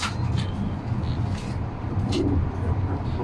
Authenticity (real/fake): real